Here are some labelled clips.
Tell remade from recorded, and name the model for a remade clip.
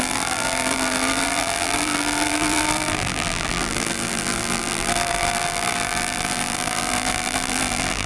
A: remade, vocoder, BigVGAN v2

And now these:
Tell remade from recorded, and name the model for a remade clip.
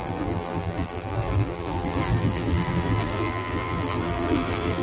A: remade, vocoder, BigVGAN v2